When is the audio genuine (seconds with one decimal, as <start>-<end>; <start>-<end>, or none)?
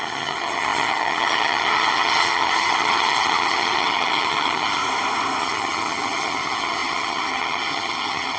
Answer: 4.8-5.4